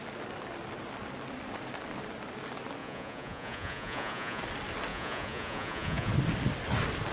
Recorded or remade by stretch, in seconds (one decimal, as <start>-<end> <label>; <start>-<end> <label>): 0.0-2.8 recorded; 2.8-4.4 remade; 4.4-4.9 recorded; 4.9-6.1 remade; 6.1-7.1 recorded